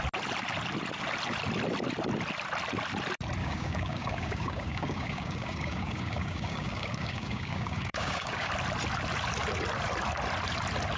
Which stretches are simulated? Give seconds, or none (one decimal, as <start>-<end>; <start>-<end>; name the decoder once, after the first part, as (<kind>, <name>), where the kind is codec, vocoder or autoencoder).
3.4-8.5 (codec, DAC)